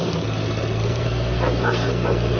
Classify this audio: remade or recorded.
remade